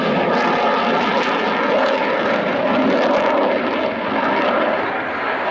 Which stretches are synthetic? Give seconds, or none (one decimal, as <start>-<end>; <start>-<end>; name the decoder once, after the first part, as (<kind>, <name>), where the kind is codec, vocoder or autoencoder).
none